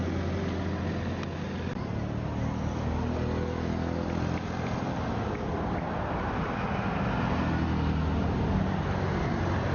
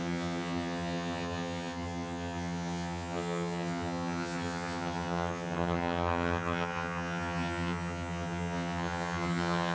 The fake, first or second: second